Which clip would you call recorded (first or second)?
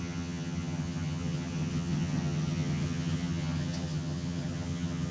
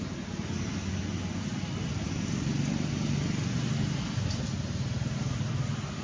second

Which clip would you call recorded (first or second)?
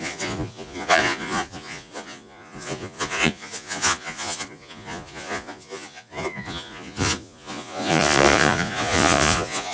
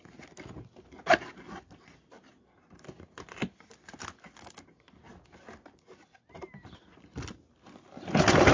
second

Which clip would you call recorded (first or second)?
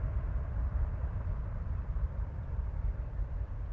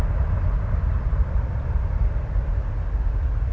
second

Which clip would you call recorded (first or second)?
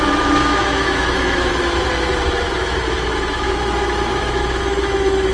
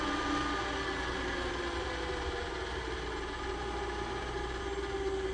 second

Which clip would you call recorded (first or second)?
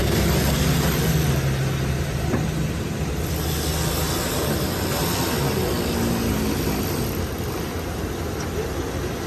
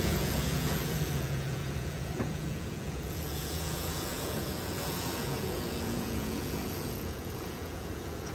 first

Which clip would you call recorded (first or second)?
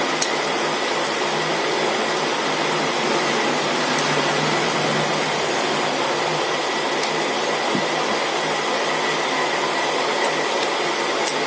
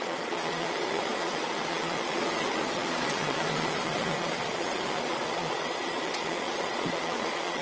first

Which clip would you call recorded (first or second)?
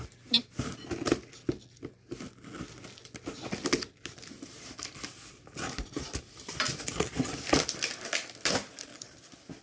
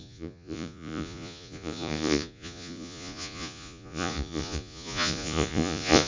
first